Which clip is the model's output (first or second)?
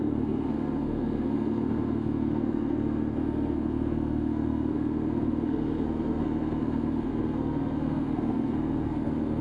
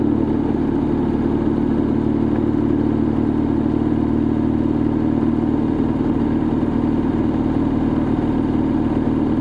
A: first